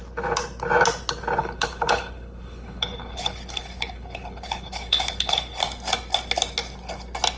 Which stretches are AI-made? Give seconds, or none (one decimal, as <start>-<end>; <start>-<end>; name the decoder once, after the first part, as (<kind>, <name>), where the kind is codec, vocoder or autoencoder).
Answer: 1.4-5.6 (codec, HILCodec)

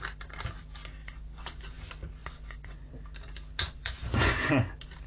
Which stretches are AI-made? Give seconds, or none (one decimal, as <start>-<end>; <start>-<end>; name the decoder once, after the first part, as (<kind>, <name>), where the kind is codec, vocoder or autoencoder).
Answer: 1.0-1.8 (vocoder, Vocos); 2.2-2.9; 3.6-4.5

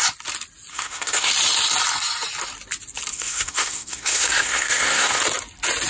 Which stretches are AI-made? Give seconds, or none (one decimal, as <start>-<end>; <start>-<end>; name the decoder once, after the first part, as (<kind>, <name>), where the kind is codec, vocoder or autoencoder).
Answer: 0.7-1.3 (codec, SNAC); 3.1-5.2

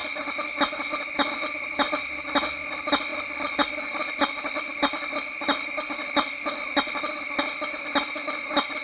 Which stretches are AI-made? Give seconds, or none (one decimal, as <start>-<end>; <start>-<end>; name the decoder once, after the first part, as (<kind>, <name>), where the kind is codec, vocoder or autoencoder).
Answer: 3.1-7.4 (vocoder, BigVGAN v2)

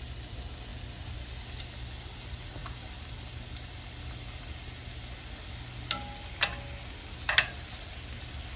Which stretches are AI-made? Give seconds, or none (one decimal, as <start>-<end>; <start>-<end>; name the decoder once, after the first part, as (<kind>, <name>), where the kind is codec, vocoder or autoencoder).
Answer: none